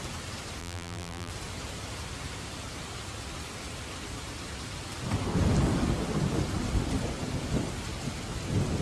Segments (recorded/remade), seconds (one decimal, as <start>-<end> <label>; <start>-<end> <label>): 0.0-0.6 recorded; 0.6-1.3 remade; 1.3-8.8 recorded